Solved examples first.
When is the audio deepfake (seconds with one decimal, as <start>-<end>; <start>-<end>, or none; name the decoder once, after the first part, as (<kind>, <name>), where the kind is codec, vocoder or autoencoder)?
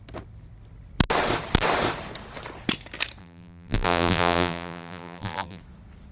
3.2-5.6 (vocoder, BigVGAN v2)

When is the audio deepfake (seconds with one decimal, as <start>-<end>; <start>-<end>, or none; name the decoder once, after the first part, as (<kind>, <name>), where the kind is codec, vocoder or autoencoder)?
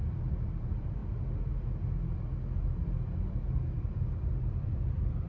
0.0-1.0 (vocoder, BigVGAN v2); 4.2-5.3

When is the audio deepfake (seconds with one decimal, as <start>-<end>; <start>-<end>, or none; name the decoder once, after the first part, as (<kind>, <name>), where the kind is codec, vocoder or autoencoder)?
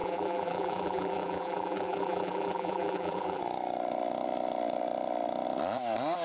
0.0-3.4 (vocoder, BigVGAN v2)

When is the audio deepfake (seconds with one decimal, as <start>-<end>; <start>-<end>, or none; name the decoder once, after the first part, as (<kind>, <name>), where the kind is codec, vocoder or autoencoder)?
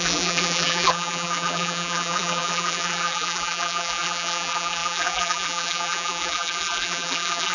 0.0-7.5 (vocoder, BigVGAN v2)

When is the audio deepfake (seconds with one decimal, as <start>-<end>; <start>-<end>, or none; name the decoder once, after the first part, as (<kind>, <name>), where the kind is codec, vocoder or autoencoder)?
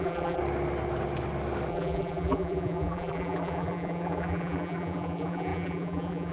0.0-0.4 (vocoder, BigVGAN v2); 1.7-6.3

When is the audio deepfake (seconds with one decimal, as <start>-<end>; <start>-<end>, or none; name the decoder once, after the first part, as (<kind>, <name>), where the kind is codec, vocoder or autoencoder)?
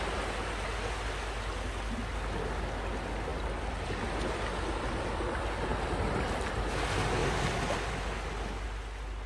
3.3-5.2 (vocoder, BigVGAN v2); 5.7-6.5; 7.2-7.9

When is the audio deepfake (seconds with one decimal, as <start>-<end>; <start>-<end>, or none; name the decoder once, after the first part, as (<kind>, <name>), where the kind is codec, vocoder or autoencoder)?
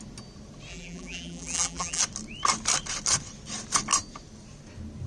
0.7-2.0 (vocoder, BigVGAN v2)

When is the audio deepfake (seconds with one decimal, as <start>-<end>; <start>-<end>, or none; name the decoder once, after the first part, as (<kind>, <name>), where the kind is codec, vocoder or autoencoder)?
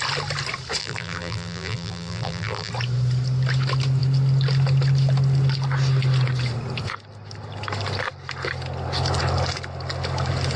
0.8-2.7 (vocoder, BigVGAN v2)